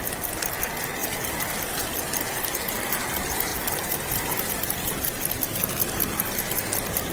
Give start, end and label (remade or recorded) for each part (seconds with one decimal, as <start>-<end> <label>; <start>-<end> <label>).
0.0-1.0 recorded; 1.0-1.9 remade; 1.9-3.5 recorded; 3.5-4.9 remade; 4.9-7.1 recorded